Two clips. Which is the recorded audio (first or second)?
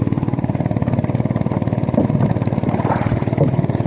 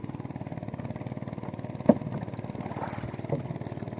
second